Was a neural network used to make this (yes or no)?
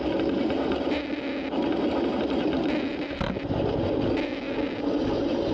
no